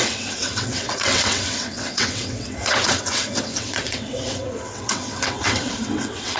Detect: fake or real fake